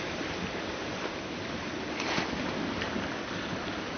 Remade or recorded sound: recorded